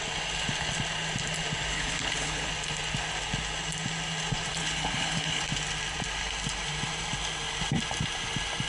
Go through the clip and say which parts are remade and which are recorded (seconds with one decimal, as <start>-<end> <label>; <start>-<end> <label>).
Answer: 0.0-1.7 recorded; 1.7-2.5 remade; 2.5-4.6 recorded; 4.6-5.4 remade; 5.4-8.7 recorded